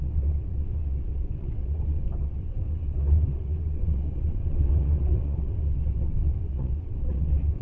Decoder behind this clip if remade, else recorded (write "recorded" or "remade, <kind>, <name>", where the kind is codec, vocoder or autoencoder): remade, vocoder, WaveNeXt